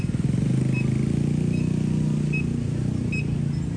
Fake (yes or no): no